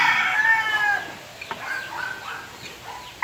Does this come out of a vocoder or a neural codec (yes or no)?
no